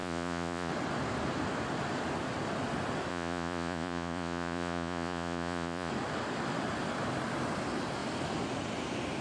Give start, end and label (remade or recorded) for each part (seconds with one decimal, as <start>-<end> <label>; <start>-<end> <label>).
0.0-0.7 remade; 0.7-3.1 recorded; 3.1-5.9 remade; 5.9-9.2 recorded